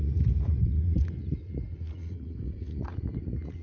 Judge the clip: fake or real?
fake